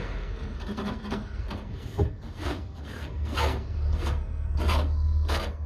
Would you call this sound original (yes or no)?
no